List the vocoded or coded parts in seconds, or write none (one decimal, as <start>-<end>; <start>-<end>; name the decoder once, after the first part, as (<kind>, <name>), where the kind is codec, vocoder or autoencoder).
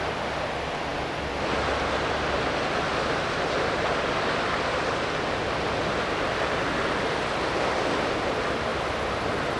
none